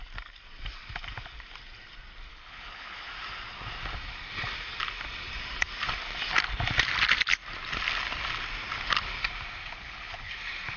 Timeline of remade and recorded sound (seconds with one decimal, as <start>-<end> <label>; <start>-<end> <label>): 0.0-2.3 recorded; 2.3-3.1 remade; 3.1-9.6 recorded; 9.6-10.3 remade; 10.3-10.8 recorded